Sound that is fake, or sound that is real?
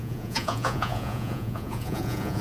fake